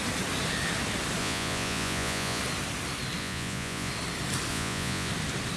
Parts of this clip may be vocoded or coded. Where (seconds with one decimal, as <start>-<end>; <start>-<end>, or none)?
1.2-2.4; 3.2-3.9; 4.5-5.1